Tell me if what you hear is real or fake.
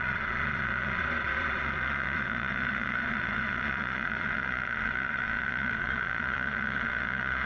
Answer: fake